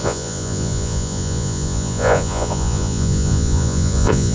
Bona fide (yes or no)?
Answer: no